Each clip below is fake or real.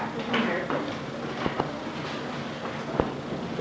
real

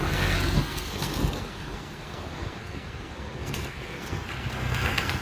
fake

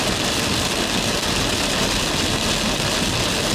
real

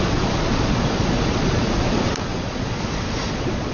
fake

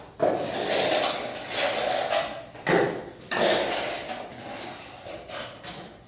real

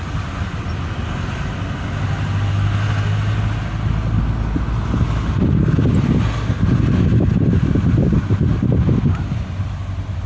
real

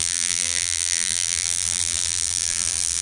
fake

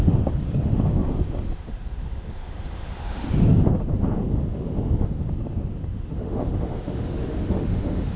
fake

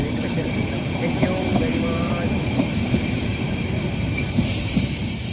fake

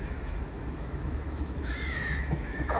fake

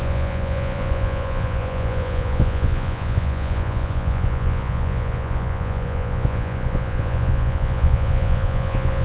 fake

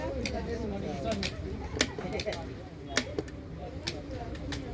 real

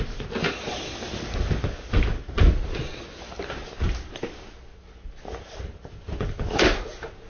real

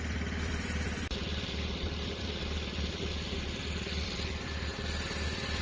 fake